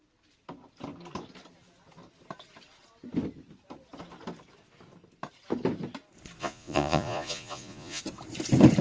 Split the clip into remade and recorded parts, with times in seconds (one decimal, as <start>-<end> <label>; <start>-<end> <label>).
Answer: 0.0-6.4 recorded; 6.4-8.0 remade; 8.0-8.8 recorded